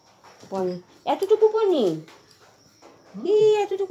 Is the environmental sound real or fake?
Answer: fake